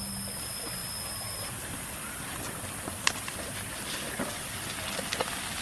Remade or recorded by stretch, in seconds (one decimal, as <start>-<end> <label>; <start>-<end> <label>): 0.0-0.8 recorded; 0.8-2.2 remade; 2.2-2.9 recorded; 2.9-4.4 remade; 4.4-5.6 recorded